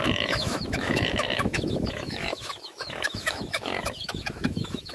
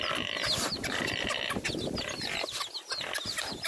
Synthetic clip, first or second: first